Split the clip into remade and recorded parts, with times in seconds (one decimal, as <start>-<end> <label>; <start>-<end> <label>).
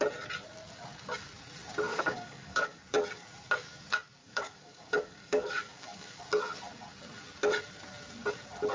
0.0-1.9 recorded; 1.9-2.8 remade; 2.8-4.2 recorded; 4.2-6.2 remade; 6.2-8.7 recorded